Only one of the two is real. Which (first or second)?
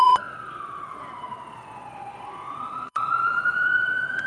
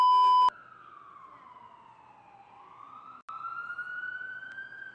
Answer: second